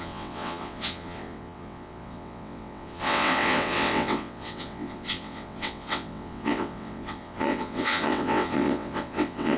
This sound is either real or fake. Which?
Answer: fake